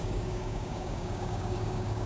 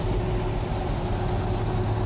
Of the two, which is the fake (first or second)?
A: first